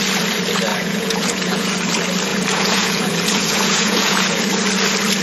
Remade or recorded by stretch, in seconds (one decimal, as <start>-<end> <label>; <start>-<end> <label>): 0.0-0.7 recorded; 0.7-1.7 remade; 1.7-2.3 recorded; 2.3-4.4 remade; 4.4-5.2 recorded